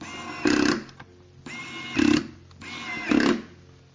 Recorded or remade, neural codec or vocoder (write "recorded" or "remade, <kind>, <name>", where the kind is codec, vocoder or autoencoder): recorded